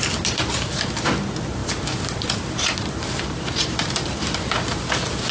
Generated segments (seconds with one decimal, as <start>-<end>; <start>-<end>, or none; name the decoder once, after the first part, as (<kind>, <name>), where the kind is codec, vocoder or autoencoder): 1.6-4.8 (vocoder, BigVGAN v2)